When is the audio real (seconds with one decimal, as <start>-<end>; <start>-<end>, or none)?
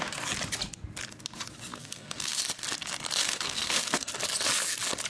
0.0-1.7; 2.4-3.2; 4.1-5.1